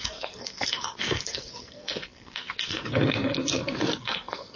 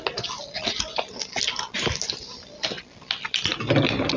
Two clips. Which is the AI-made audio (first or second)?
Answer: first